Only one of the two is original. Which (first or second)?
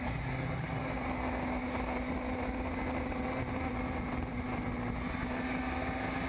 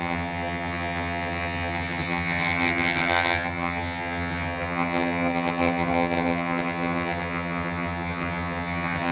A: first